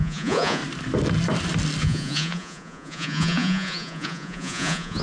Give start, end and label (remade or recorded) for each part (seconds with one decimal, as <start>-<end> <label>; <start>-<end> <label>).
0.0-0.6 remade; 0.6-1.8 recorded; 1.8-5.0 remade